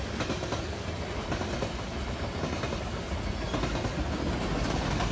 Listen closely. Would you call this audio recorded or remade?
recorded